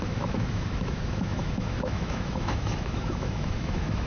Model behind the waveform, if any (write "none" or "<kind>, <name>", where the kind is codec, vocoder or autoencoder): autoencoder, DAC-VAE